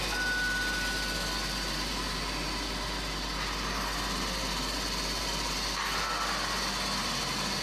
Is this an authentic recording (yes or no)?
yes